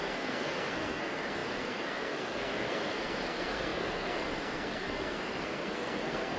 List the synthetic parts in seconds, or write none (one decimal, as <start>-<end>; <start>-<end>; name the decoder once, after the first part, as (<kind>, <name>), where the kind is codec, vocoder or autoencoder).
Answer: 0.0-6.4 (codec, SNAC)